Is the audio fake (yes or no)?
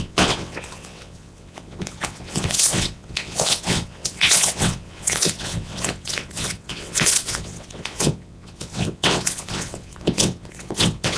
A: yes